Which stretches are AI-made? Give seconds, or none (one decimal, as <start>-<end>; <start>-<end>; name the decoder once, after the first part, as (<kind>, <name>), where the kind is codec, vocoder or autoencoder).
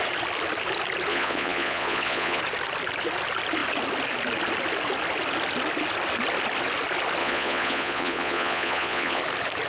1.1-2.4 (vocoder, Vocos); 7.2-9.2